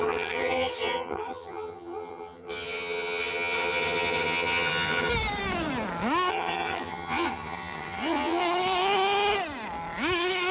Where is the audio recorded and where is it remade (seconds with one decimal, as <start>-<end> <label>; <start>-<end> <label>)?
0.0-5.1 remade; 5.1-6.3 recorded; 6.3-8.4 remade; 8.4-10.5 recorded